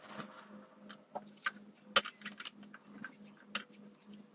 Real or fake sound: real